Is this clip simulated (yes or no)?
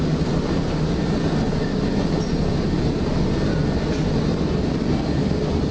no